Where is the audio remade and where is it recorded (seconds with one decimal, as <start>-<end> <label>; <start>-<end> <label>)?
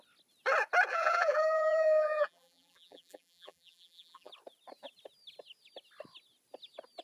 0.0-0.9 recorded; 0.9-4.3 remade; 4.3-7.0 recorded